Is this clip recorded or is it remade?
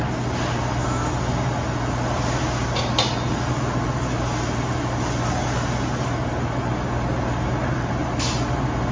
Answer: recorded